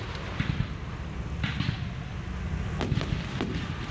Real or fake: real